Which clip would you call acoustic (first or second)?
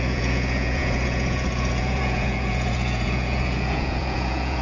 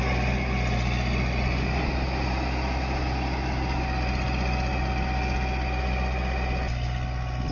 second